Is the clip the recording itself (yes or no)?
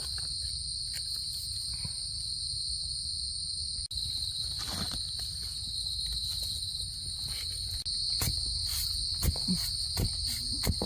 yes